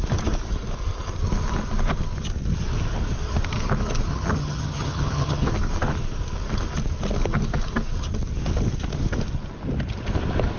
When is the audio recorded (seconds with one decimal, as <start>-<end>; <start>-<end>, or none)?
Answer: 0.0-4.1; 5.5-10.6